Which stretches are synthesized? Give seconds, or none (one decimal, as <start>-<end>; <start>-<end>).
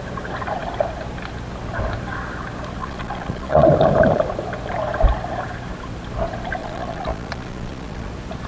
2.8-3.7; 6.6-8.1